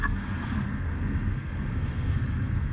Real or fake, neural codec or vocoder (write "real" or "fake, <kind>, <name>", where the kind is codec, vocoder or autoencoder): fake, codec, SNAC